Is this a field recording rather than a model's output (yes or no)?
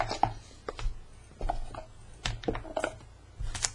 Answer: yes